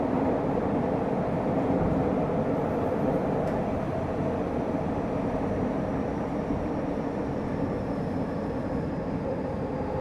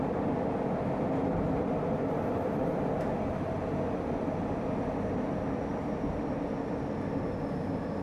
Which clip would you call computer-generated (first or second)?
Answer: first